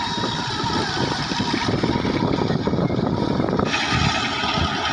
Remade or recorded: recorded